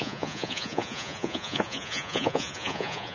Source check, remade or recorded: remade